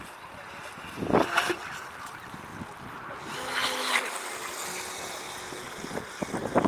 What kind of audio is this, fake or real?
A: real